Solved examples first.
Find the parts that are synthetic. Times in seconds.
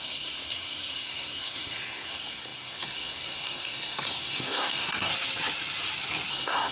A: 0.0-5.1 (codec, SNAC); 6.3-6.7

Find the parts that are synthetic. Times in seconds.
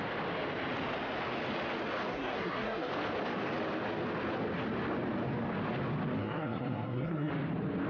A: 2.1-2.9 (codec, SNAC); 6.2-7.3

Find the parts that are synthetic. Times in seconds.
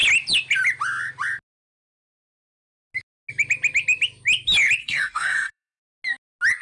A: 4.8-5.8 (codec, SNAC)